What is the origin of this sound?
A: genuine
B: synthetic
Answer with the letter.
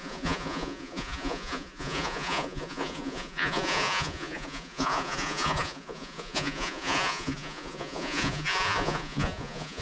B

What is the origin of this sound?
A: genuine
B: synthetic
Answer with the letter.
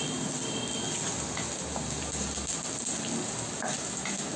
A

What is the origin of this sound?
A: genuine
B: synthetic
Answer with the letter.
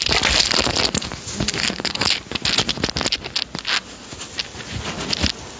A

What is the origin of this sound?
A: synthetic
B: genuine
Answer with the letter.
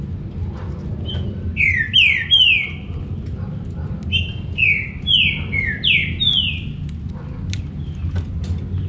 B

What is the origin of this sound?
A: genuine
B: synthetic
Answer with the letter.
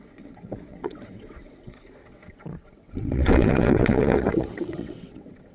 B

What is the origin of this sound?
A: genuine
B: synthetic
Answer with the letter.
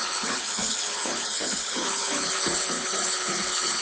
B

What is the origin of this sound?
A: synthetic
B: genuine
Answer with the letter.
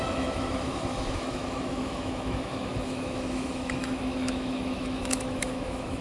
A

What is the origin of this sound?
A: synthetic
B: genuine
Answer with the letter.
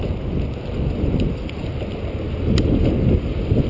B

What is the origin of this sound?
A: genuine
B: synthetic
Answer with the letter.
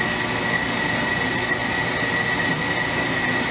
A